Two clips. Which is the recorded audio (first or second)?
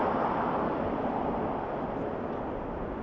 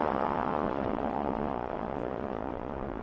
first